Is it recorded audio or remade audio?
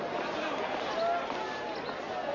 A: recorded